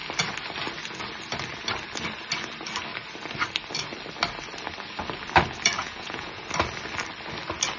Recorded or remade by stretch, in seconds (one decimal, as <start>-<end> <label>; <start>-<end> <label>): 0.0-5.8 recorded; 5.8-6.4 remade; 6.4-7.8 recorded